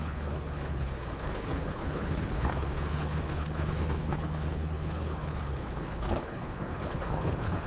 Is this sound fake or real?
fake